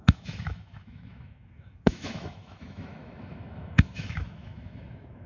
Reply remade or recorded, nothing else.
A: remade